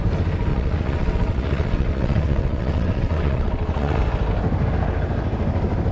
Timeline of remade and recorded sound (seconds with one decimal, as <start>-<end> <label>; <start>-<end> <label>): 0.0-0.5 recorded; 0.5-4.0 remade; 4.0-5.9 recorded